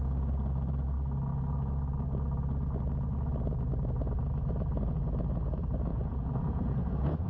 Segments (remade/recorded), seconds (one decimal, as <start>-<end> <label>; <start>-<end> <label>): 0.0-5.9 recorded; 5.9-7.3 remade